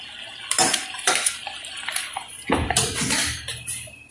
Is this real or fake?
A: real